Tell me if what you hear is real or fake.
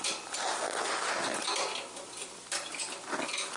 real